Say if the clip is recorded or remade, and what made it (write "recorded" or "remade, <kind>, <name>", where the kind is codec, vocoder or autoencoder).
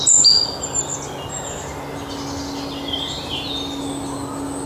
recorded